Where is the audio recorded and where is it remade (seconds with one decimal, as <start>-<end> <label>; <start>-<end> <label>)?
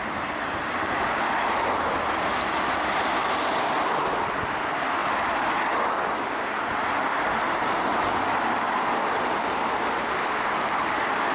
0.0-5.0 recorded; 5.0-5.5 remade; 5.5-11.3 recorded